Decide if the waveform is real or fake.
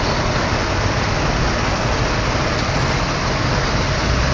real